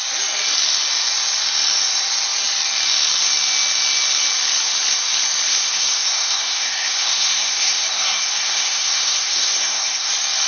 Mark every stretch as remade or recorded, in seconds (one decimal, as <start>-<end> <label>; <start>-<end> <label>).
0.0-5.5 recorded; 5.5-10.1 remade; 10.1-10.5 recorded